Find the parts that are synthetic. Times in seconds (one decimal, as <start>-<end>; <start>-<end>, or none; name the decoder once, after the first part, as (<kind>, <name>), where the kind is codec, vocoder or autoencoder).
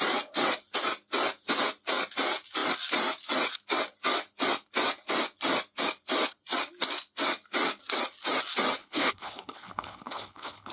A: 8.8-10.7 (codec, HILCodec)